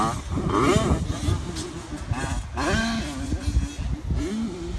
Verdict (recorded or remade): recorded